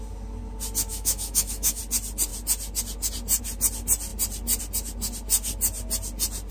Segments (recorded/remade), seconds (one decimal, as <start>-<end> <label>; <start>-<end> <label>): 0.0-0.9 recorded; 0.9-1.8 remade; 1.8-6.5 recorded